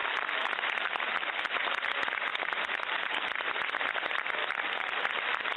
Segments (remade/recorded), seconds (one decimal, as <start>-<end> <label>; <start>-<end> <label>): 0.0-2.3 recorded; 2.3-3.8 remade; 3.8-4.4 recorded; 4.4-5.0 remade; 5.0-5.6 recorded